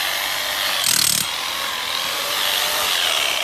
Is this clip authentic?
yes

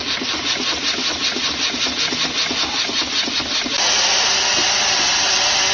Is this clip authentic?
yes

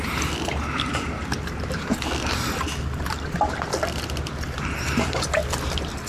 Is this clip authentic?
no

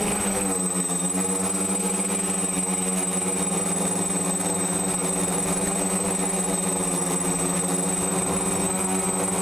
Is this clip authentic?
yes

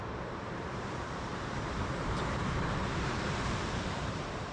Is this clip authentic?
no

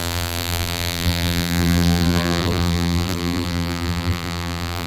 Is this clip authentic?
no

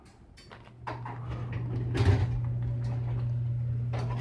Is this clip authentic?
yes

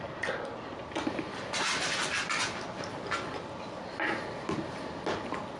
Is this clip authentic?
yes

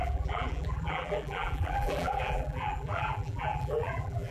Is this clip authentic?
no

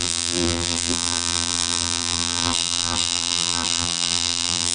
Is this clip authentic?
no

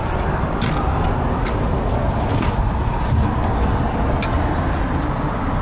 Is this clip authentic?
yes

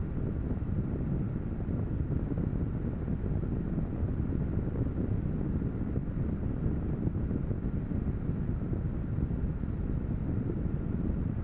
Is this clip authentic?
yes